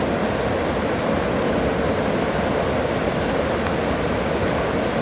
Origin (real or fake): real